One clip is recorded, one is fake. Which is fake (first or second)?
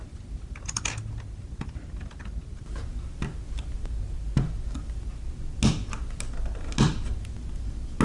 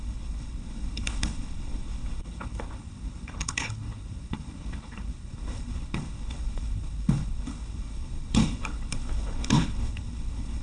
second